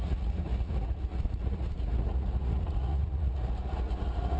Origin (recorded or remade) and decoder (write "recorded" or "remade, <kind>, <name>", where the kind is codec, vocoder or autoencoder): remade, vocoder, Vocos